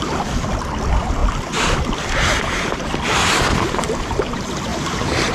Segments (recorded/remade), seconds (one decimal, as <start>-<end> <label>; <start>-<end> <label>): 0.0-5.3 recorded